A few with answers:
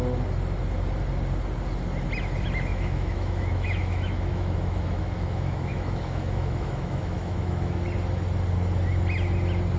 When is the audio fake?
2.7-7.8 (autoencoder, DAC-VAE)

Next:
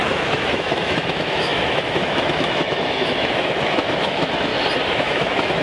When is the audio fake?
0.0-4.5 (autoencoder, DAC-VAE); 5.0-5.6

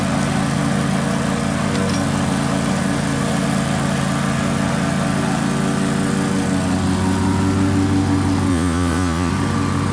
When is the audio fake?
8.5-9.3 (vocoder, Vocos)